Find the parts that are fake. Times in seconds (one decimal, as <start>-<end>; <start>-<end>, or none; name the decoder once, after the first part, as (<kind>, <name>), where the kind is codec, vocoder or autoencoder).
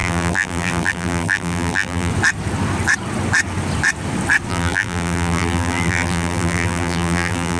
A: 0.0-2.1 (vocoder, BigVGAN v2); 4.5-7.6